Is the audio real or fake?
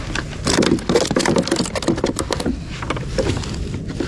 real